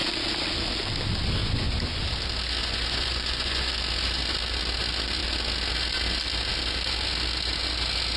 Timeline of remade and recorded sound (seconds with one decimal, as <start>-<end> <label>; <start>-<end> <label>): 0.0-1.4 recorded; 1.4-2.0 remade; 2.0-2.6 recorded; 2.6-3.7 remade; 3.7-8.2 recorded